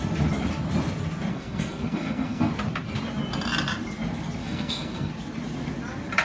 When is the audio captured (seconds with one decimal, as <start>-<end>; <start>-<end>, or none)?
0.0-1.3; 2.5-4.4; 5.1-6.2